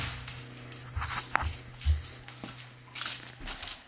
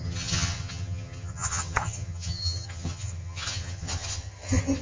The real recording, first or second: first